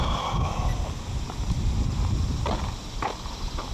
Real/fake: real